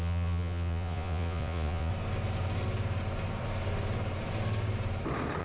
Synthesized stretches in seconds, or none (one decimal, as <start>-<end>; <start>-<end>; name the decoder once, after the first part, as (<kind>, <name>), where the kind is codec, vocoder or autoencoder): 0.0-1.9 (vocoder, Vocos)